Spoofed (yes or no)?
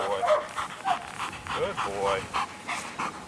no